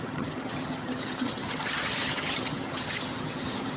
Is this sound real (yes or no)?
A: no